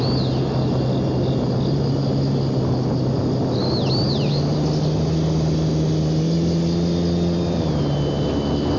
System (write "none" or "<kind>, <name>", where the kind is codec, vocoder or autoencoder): none